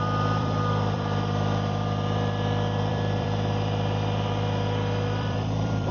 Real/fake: fake